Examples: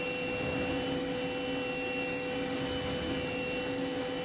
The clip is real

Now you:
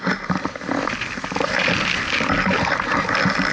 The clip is real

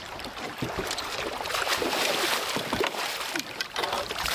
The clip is fake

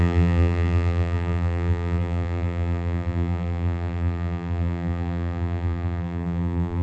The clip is fake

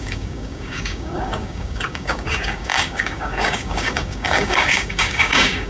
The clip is fake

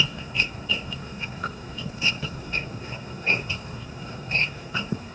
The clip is fake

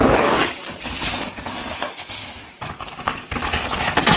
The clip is fake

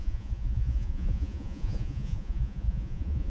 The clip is fake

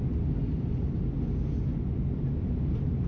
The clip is real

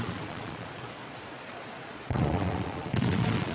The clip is fake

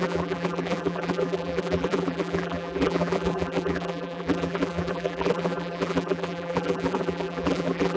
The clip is fake